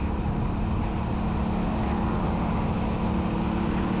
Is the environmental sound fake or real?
real